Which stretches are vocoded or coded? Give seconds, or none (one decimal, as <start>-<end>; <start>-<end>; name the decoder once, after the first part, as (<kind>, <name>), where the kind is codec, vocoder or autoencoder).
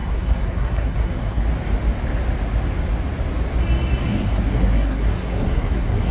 0.0-1.4 (codec, SNAC); 4.0-6.1